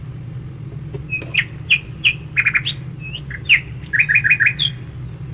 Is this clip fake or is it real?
real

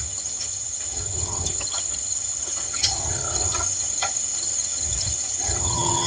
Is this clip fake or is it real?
fake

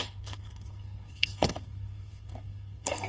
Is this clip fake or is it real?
fake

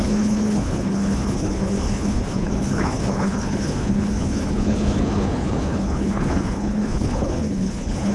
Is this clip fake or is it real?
fake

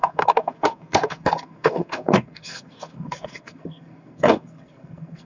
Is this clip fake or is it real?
fake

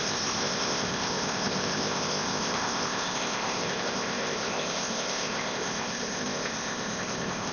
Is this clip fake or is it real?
fake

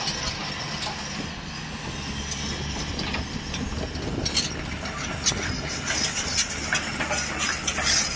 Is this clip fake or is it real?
real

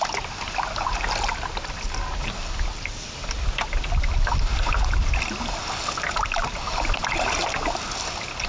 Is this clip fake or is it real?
real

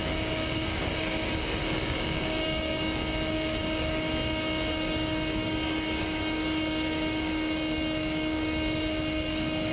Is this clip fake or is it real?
fake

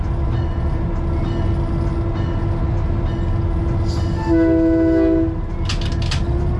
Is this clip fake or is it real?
real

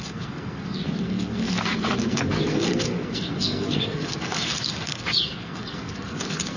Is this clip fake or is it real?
fake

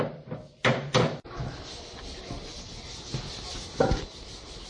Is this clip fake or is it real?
real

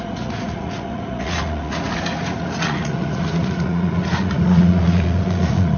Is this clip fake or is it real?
fake